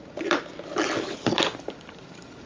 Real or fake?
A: fake